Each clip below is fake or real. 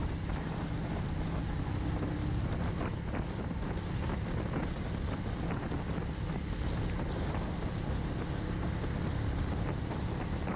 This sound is real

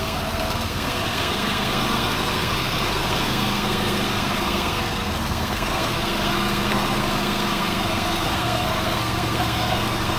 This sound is fake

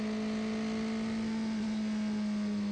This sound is real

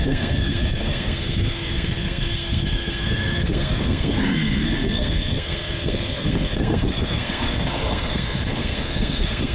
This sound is fake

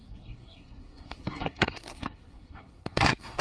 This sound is fake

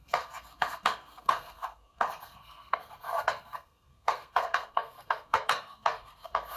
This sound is fake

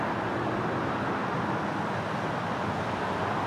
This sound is real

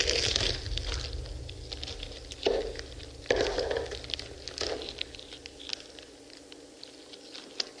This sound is real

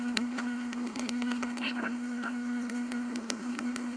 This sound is fake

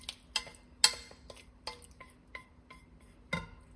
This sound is real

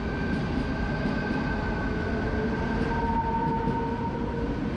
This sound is real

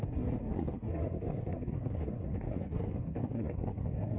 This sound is fake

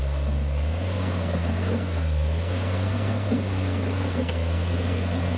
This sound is fake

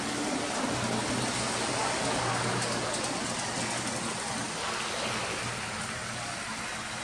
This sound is real